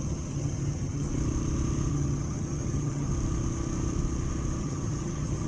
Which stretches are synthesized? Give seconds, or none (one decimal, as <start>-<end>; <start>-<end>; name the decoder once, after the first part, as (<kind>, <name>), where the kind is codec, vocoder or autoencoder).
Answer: 0.0-1.1 (vocoder, HiFi-GAN); 1.9-3.1; 4.6-5.5